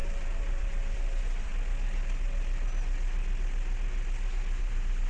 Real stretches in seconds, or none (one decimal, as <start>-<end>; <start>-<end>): 1.5-4.6